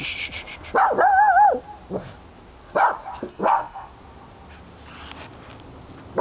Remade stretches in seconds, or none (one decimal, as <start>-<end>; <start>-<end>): 3.3-3.9